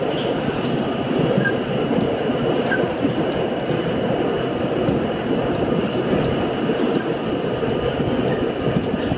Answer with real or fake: real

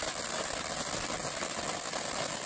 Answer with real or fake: real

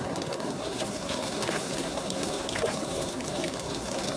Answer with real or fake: fake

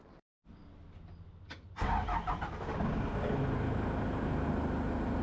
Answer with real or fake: real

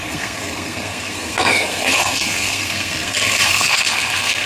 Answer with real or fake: fake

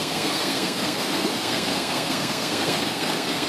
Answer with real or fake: fake